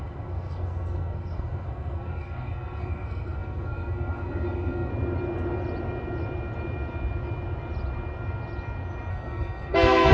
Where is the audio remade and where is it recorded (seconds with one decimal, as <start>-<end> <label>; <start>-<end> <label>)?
0.0-4.9 remade; 4.9-9.1 recorded; 9.1-10.1 remade